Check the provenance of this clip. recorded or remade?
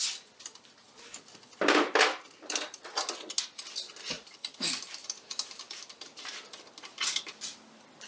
recorded